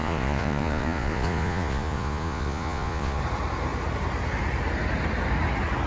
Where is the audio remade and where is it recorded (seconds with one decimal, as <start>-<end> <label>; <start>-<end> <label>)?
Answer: 0.0-3.2 remade; 3.2-5.9 recorded